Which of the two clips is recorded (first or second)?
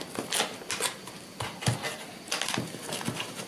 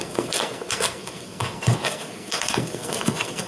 first